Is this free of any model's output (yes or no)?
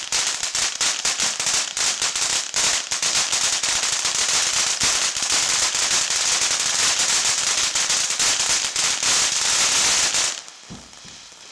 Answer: yes